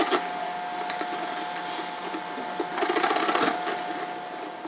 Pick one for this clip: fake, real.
real